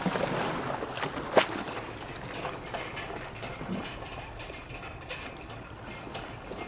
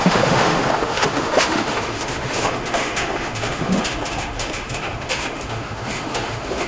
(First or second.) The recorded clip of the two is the first